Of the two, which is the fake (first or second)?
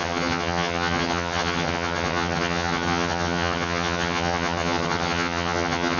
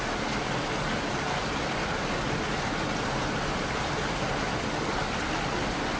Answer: first